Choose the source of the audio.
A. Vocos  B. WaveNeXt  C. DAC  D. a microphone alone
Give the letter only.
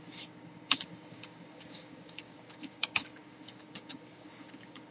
C